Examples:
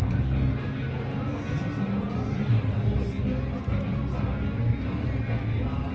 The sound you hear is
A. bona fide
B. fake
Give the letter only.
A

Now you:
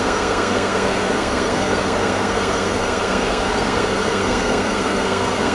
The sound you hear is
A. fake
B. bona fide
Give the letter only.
A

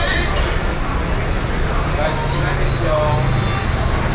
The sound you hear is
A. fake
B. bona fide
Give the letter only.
B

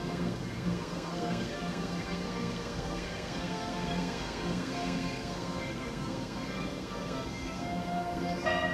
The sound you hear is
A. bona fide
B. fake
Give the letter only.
B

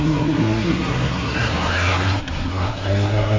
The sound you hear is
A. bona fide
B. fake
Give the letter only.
B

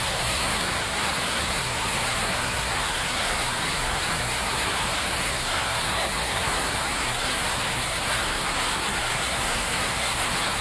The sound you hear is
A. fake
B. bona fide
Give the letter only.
A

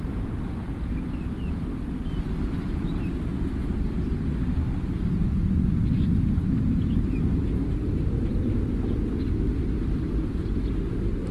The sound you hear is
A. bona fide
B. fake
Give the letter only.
A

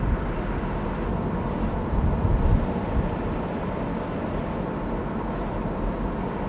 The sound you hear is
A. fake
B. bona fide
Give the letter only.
B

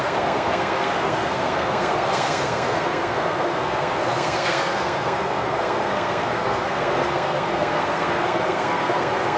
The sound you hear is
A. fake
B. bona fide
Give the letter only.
A